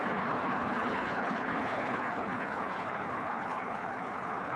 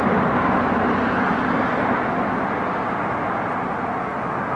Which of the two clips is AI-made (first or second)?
first